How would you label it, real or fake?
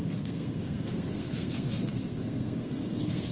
fake